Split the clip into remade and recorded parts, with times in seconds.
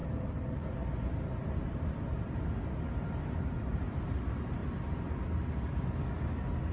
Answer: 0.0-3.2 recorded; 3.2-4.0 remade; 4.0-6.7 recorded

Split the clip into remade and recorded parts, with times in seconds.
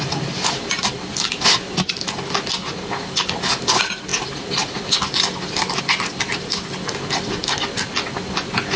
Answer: 0.0-8.8 recorded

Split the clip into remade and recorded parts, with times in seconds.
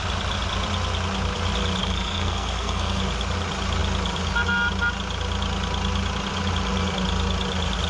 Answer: 0.0-1.8 recorded; 1.8-3.0 remade; 3.0-7.9 recorded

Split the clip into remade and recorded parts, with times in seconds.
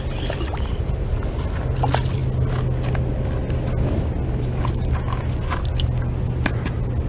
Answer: 0.0-7.1 recorded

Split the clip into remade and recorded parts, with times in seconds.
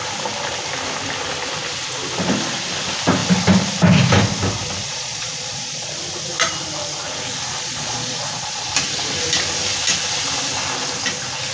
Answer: 0.0-4.8 recorded; 4.8-5.9 remade; 5.9-7.6 recorded; 7.6-8.7 remade; 8.7-11.5 recorded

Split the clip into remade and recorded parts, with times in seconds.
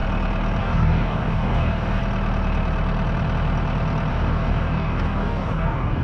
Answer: 0.0-0.6 recorded; 0.6-2.0 remade; 2.0-4.1 recorded; 4.1-6.0 remade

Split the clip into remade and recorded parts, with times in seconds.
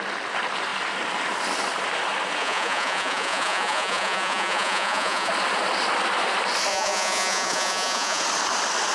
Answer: 0.0-2.4 recorded; 2.4-5.3 remade; 5.3-6.7 recorded; 6.7-8.2 remade; 8.2-8.9 recorded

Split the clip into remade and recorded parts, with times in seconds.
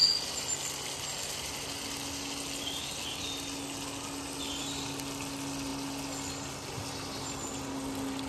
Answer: 0.0-8.3 recorded